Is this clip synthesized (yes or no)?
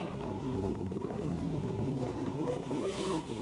yes